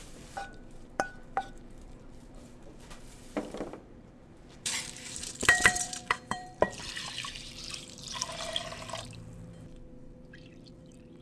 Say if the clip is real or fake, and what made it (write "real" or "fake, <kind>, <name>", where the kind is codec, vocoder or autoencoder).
fake, vocoder, BigVGAN v2